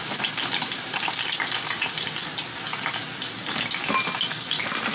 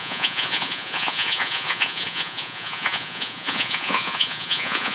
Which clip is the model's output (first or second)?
second